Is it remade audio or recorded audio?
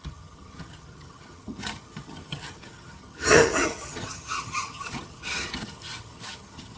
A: remade